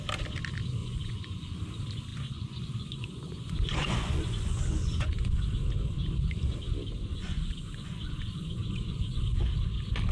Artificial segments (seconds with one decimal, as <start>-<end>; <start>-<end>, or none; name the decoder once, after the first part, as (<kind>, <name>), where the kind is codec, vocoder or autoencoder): 0.8-1.6 (vocoder, Vocos); 2.1-5.4; 7.1-9.4